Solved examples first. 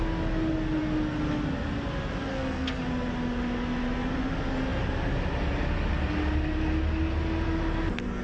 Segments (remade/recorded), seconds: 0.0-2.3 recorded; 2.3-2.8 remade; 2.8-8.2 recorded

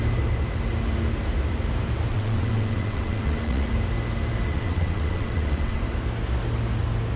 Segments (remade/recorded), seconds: 0.0-2.1 recorded; 2.1-3.7 remade; 3.7-4.5 recorded; 4.5-5.8 remade; 5.8-7.2 recorded

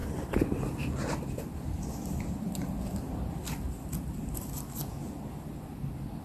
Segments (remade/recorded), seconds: 0.0-6.2 recorded

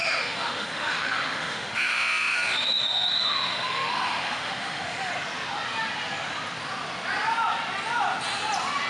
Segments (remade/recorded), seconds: 0.0-5.1 remade; 5.1-8.9 recorded

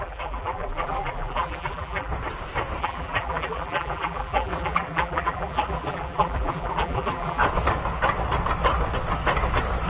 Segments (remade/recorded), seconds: 0.0-2.1 remade; 2.1-2.8 recorded; 2.8-7.4 remade; 7.4-9.9 recorded

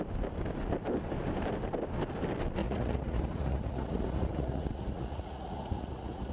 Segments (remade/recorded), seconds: 0.0-2.6 recorded; 2.6-6.3 remade

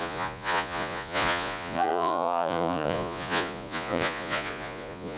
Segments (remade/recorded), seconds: 0.0-5.2 remade